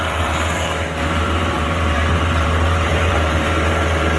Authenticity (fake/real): fake